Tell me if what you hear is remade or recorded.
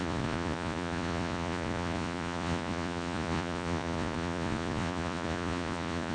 remade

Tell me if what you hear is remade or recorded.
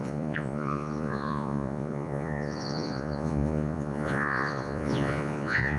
remade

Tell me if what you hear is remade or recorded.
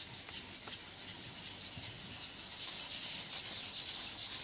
recorded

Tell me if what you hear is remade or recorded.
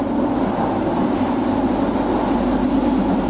recorded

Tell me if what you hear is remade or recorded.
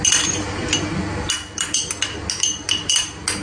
recorded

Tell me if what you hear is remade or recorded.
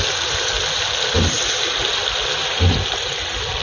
recorded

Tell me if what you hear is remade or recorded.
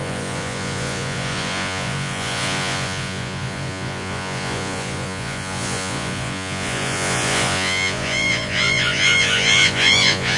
remade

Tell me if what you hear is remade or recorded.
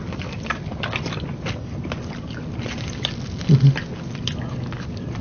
recorded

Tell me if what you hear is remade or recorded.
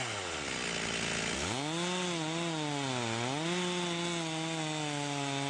recorded